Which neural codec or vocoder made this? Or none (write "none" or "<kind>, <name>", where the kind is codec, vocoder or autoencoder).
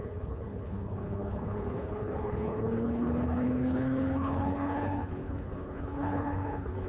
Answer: codec, HILCodec